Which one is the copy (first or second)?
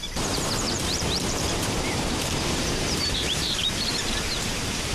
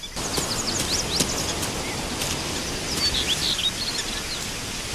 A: first